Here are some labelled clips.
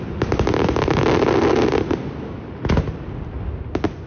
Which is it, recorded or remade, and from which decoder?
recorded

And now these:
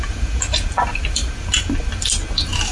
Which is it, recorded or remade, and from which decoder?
recorded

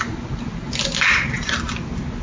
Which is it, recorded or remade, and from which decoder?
recorded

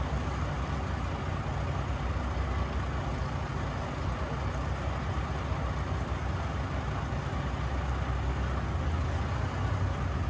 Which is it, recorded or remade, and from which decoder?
recorded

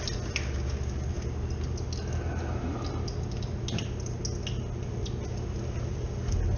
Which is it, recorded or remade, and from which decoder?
recorded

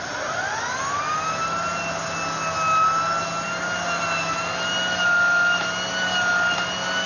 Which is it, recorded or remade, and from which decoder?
recorded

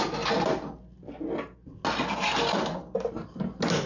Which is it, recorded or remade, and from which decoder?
recorded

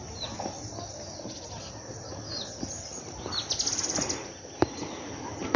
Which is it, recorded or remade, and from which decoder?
recorded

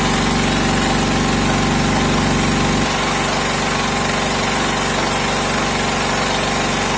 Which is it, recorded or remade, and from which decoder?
recorded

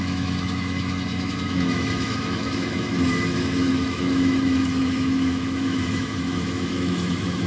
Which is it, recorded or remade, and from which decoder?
remade, autoencoder, DAC-VAE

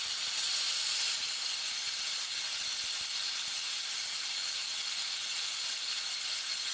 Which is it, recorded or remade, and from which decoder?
recorded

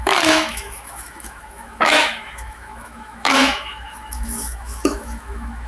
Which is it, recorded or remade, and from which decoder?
remade, autoencoder, DAC-VAE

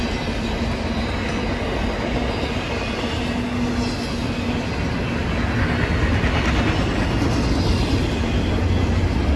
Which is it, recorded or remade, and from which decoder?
recorded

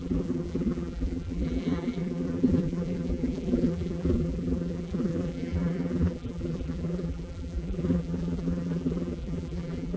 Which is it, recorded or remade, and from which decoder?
remade, vocoder, BigVGAN v2